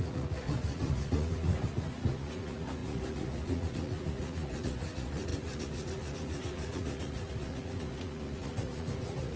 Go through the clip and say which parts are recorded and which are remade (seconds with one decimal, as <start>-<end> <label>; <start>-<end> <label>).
0.0-9.4 remade